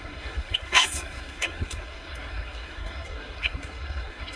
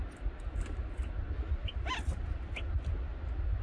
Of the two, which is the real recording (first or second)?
second